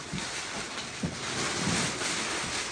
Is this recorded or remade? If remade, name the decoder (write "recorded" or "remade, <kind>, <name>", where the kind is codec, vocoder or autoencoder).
recorded